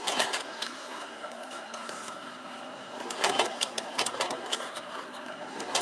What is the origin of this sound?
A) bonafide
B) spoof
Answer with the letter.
B